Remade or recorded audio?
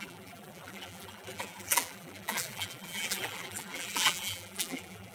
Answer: remade